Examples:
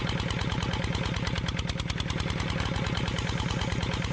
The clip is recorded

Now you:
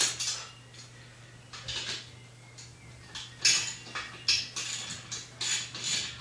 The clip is recorded